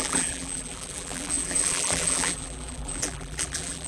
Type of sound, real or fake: fake